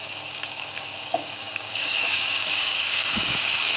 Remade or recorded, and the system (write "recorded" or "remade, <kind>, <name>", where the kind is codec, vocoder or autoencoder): remade, codec, DAC